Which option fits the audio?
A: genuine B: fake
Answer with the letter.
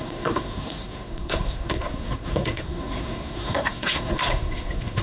B